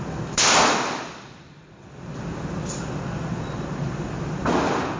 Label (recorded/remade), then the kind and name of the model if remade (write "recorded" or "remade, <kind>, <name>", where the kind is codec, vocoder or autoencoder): recorded